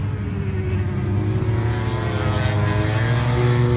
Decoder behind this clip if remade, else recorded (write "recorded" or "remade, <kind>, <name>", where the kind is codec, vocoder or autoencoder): recorded